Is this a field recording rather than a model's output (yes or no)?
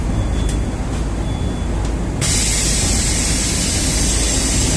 yes